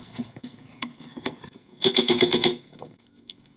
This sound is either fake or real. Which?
fake